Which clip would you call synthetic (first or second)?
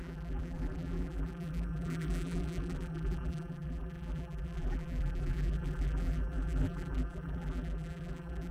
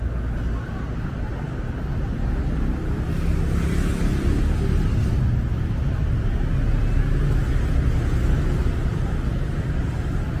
first